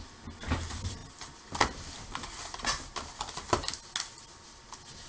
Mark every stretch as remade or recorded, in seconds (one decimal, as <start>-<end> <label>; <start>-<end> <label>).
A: 0.0-5.1 recorded